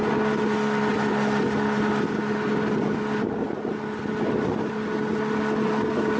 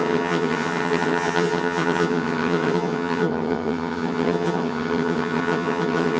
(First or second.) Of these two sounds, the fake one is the second